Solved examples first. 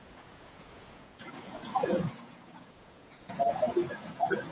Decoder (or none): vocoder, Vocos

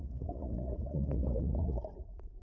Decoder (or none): vocoder, Vocos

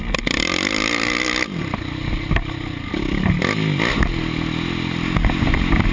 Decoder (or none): none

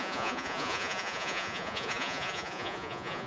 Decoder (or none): vocoder, Vocos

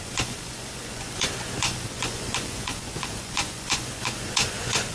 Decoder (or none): vocoder, Vocos